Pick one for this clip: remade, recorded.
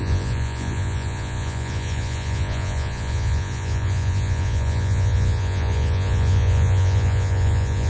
remade